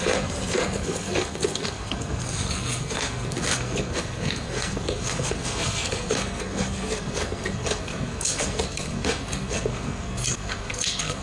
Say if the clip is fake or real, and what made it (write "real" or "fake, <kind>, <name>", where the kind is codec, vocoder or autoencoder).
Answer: fake, codec, SNAC